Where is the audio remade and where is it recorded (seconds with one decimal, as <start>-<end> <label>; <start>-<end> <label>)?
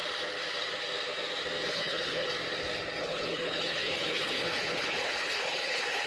0.0-1.7 recorded; 1.7-2.3 remade; 2.3-3.0 recorded; 3.0-6.1 remade